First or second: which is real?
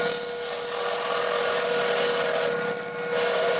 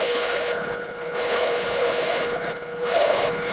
first